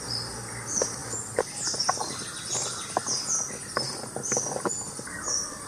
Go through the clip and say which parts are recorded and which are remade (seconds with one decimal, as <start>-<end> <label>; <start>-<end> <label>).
0.0-5.7 recorded